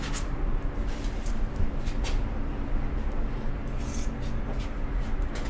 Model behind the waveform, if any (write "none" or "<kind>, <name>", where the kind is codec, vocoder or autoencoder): none